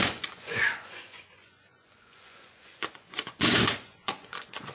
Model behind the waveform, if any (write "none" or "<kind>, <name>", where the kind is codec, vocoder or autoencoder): vocoder, Vocos